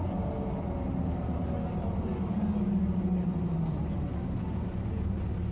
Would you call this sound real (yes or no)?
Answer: yes